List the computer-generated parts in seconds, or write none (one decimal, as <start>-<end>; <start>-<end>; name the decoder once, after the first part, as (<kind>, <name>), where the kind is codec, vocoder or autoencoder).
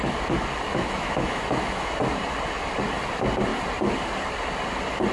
0.7-2.0 (autoencoder, DAC-VAE)